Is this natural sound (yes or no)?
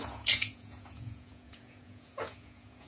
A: no